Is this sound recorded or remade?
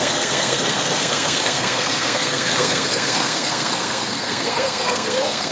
remade